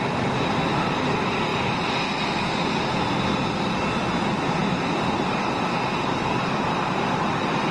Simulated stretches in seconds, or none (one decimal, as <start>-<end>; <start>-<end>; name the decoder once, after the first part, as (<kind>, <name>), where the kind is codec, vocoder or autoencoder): none